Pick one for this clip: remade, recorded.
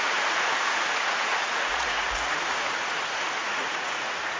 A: remade